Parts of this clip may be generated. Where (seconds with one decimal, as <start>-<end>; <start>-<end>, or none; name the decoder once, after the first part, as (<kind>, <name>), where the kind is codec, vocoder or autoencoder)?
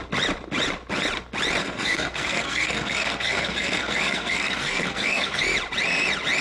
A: 1.6-5.4 (codec, SNAC)